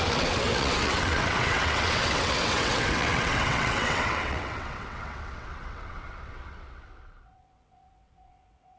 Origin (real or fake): fake